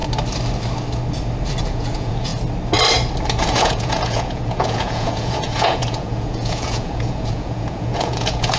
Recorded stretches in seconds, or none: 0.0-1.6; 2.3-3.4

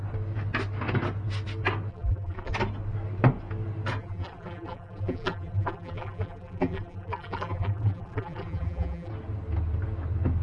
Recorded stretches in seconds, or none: 0.0-1.9; 2.5-4.0; 9.1-10.4

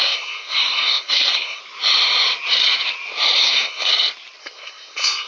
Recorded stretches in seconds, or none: 1.6-3.4; 3.9-4.4

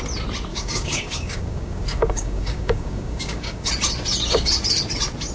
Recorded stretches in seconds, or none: 0.0-0.5; 3.7-5.3